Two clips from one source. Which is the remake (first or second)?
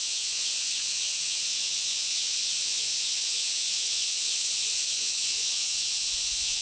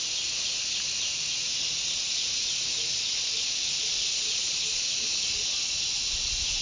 first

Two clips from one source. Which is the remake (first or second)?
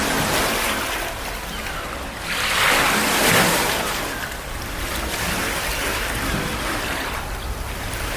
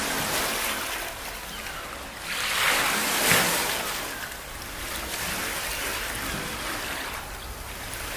first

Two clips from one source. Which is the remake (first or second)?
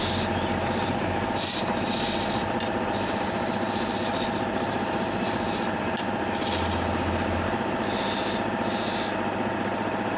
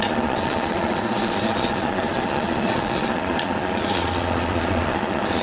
second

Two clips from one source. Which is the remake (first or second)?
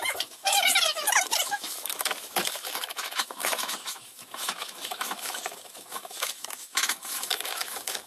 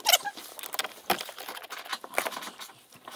first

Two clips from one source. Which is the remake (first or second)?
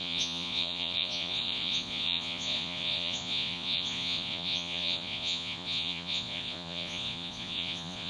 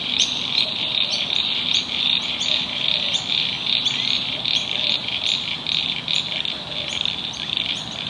first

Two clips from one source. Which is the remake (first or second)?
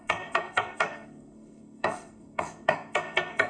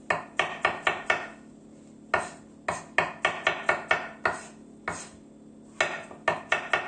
first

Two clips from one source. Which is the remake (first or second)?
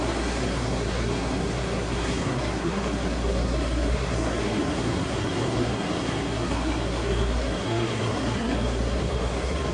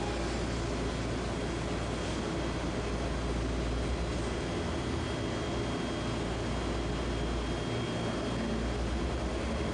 first